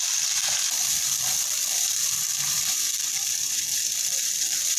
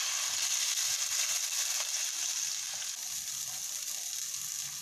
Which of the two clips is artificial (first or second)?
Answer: first